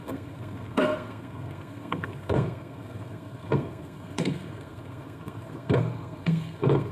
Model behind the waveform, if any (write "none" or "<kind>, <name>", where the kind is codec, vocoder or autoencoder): codec, SNAC